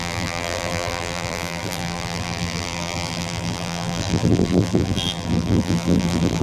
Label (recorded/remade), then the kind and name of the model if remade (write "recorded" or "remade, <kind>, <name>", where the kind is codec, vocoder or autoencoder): remade, vocoder, BigVGAN v2